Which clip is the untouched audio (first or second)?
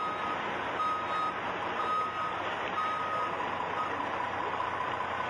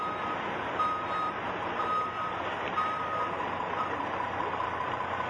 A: first